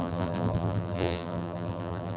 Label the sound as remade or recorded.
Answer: remade